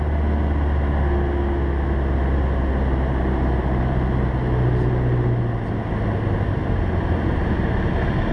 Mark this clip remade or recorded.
recorded